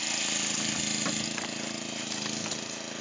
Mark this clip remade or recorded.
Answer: recorded